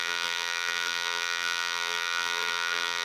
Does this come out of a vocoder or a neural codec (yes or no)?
yes